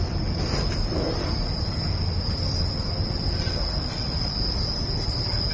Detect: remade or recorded recorded